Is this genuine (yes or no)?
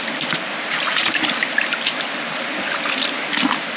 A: yes